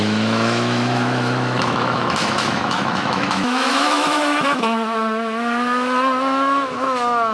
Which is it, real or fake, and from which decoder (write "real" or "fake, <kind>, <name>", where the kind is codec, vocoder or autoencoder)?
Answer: fake, autoencoder, DAC-VAE